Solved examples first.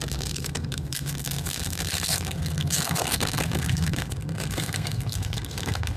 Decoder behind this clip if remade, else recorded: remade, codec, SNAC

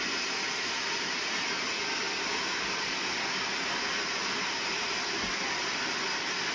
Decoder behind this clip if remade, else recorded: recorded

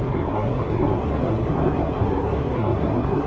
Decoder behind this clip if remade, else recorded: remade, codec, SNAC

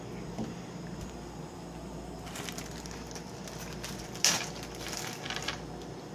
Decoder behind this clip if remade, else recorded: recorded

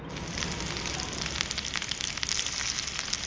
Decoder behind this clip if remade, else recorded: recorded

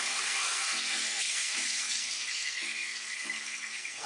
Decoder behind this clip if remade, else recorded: remade, codec, SNAC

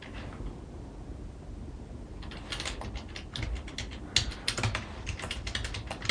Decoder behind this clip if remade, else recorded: recorded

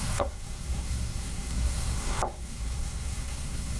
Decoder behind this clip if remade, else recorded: remade, codec, SNAC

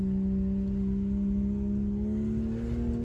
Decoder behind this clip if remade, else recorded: recorded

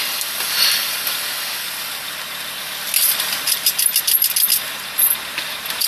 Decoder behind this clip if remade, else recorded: recorded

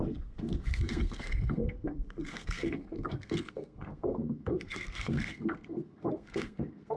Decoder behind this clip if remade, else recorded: remade, codec, SNAC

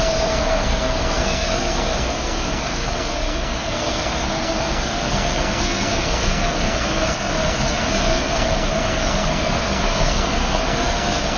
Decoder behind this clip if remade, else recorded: remade, codec, SNAC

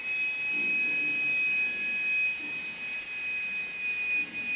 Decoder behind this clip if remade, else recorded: recorded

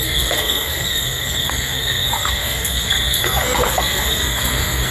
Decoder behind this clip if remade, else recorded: remade, codec, SNAC